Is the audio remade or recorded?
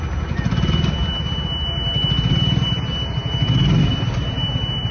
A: recorded